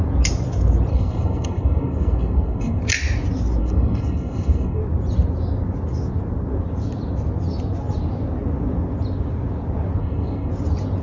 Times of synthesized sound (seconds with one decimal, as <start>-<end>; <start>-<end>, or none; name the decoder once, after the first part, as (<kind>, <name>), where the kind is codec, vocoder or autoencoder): 0.9-2.8 (codec, SNAC); 3.6-4.8; 10.0-10.5